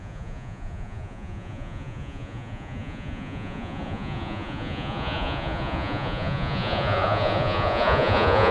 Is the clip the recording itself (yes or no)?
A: no